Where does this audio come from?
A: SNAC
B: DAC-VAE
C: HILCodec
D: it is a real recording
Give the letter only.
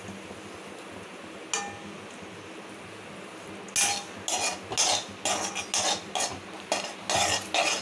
D